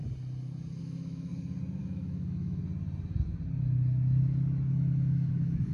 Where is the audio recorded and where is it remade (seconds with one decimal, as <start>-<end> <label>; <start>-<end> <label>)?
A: 0.0-0.8 recorded; 0.8-1.3 remade; 1.3-1.8 recorded; 1.8-2.6 remade; 2.6-4.7 recorded; 4.7-5.7 remade